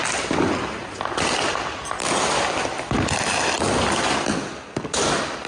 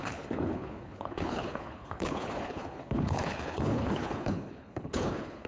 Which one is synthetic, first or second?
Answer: second